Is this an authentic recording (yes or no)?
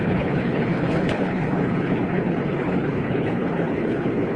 no